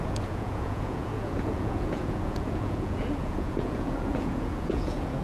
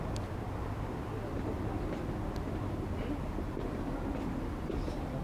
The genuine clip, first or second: second